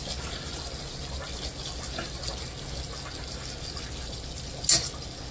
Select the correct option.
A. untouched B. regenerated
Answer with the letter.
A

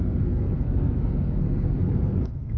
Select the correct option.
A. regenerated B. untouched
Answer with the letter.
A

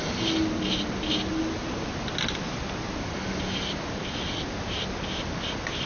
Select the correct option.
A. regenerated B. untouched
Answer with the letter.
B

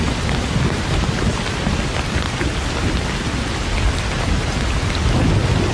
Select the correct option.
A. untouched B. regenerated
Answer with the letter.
A